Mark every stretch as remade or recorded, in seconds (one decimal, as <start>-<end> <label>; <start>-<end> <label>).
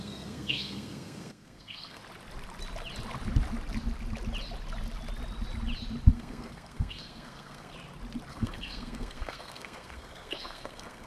0.0-2.0 remade; 2.0-6.1 recorded; 6.1-7.7 remade; 7.7-8.3 recorded; 8.3-11.1 remade